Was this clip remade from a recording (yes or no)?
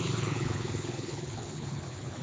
yes